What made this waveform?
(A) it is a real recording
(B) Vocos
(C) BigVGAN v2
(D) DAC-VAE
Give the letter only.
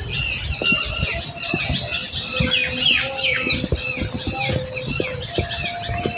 A